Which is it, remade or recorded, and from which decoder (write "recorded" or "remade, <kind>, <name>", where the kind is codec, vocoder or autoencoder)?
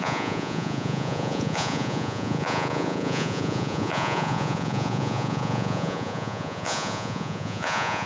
remade, vocoder, Vocos